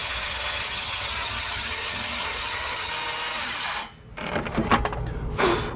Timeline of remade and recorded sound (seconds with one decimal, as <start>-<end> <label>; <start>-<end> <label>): 0.0-2.9 remade; 2.9-5.8 recorded